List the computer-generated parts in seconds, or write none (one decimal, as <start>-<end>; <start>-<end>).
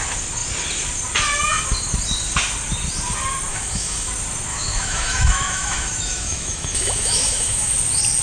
3.5-4.1; 4.5-7.7